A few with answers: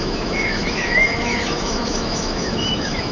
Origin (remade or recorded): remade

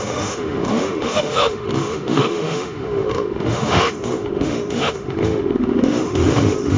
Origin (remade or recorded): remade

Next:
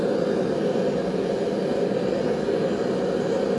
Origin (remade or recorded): recorded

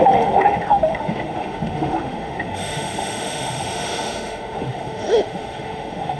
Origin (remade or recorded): remade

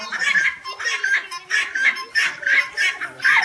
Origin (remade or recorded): recorded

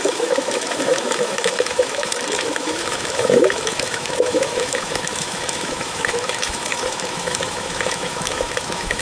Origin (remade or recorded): remade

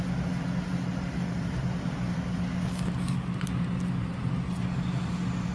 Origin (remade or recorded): recorded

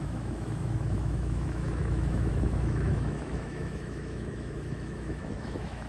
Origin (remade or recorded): remade